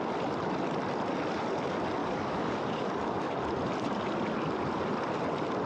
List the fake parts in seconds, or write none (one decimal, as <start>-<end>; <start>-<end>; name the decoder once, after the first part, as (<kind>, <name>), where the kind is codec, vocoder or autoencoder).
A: 2.0-3.4 (codec, DAC)